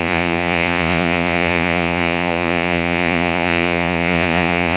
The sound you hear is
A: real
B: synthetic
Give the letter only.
B